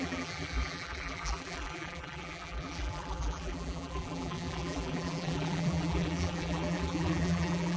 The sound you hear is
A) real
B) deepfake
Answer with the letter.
B